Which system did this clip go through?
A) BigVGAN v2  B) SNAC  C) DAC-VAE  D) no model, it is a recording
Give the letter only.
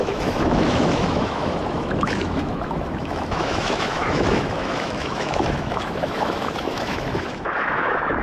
C